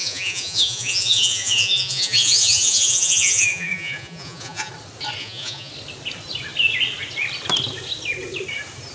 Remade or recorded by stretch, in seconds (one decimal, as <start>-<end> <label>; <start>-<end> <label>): 0.0-4.7 remade; 4.7-5.2 recorded; 5.2-5.7 remade; 5.7-8.9 recorded